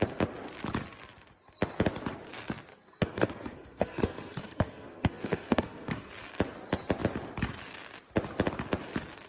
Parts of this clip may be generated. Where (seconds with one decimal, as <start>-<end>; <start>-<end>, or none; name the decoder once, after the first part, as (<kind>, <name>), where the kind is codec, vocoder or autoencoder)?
2.7-6.1 (codec, SNAC)